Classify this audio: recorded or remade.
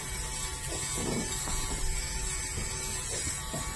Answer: recorded